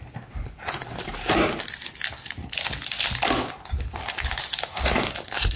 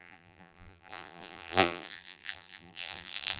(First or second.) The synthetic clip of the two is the second